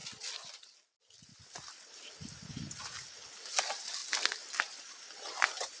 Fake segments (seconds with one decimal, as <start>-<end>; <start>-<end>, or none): none